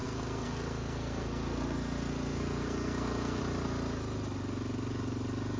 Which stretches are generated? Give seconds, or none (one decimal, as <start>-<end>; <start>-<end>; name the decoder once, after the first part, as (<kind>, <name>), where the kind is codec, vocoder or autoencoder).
0.0-3.4 (codec, SNAC)